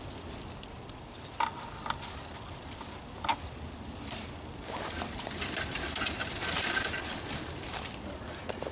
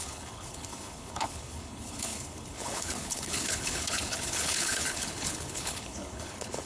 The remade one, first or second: second